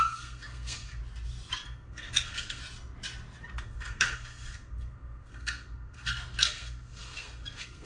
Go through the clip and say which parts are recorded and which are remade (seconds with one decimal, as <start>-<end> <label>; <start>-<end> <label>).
0.0-1.0 remade; 1.0-1.5 recorded; 1.5-2.6 remade; 2.6-3.6 recorded; 3.6-7.9 remade